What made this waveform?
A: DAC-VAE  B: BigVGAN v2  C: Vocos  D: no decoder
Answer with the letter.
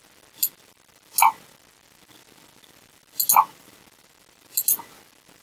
D